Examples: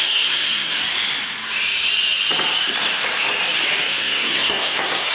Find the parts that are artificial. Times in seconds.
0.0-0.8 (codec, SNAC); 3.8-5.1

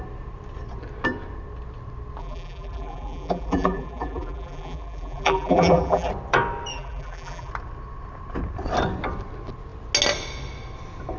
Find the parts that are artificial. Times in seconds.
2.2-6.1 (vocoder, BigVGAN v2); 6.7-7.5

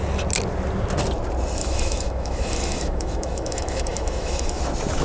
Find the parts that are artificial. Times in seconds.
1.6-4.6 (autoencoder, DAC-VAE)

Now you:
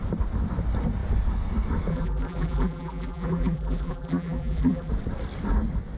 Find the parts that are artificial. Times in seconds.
1.9-4.9 (vocoder, BigVGAN v2)

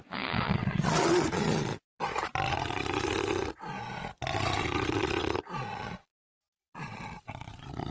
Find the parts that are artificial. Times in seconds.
0.0-1.7 (vocoder, Vocos); 4.6-7.9

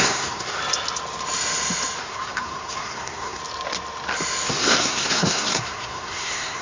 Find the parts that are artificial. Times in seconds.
0.0-0.6 (codec, SNAC); 2.0-3.4; 4.5-6.6